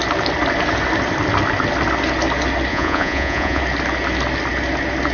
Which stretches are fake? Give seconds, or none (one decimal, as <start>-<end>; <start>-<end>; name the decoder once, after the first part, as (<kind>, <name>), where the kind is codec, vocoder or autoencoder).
2.7-3.6 (vocoder, Vocos)